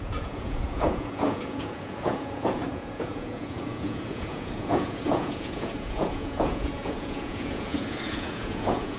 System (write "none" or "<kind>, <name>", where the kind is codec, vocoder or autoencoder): vocoder, Vocos